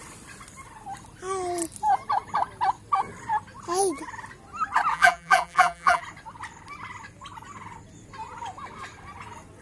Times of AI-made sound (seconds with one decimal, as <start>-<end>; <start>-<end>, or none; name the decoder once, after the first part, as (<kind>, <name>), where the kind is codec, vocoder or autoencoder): 4.9-6.0 (vocoder, BigVGAN v2)